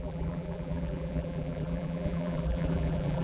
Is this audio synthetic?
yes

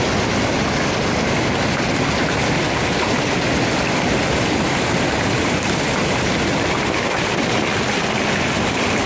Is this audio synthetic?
no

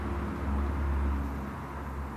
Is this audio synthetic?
no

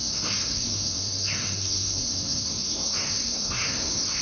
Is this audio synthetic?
yes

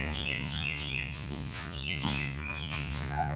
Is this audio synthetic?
yes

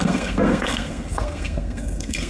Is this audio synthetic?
yes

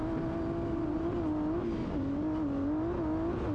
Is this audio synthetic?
no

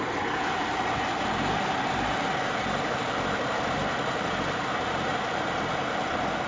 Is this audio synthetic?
no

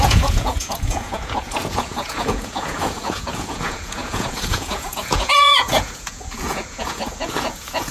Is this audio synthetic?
yes